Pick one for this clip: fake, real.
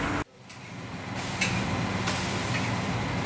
real